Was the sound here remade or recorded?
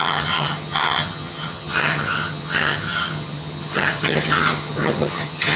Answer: remade